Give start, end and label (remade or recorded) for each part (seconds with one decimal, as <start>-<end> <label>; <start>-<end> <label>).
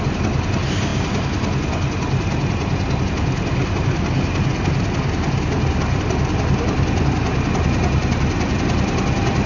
0.0-9.5 recorded